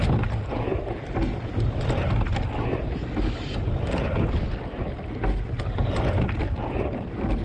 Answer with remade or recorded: recorded